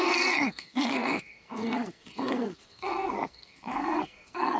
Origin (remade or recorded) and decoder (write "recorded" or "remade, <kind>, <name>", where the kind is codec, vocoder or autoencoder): remade, codec, SNAC